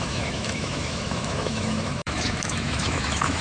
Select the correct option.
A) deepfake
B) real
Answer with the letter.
A